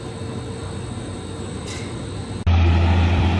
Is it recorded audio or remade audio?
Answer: recorded